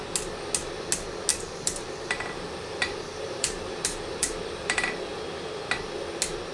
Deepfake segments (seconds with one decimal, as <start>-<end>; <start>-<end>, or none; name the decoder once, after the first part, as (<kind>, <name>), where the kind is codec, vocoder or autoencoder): 1.3-5.2 (vocoder, BigVGAN v2)